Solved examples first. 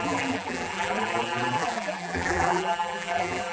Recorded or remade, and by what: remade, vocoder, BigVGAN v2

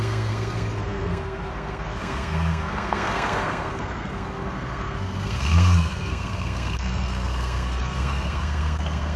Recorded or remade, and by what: remade, codec, SNAC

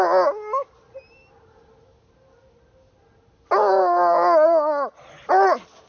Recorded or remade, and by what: recorded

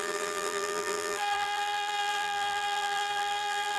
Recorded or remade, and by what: remade, vocoder, BigVGAN v2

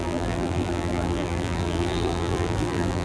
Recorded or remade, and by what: remade, vocoder, BigVGAN v2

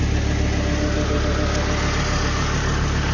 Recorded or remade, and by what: recorded